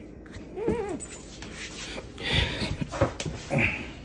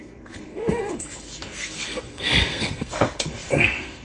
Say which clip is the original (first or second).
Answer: first